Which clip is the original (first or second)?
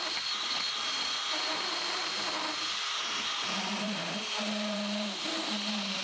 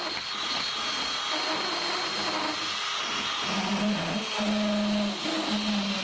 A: second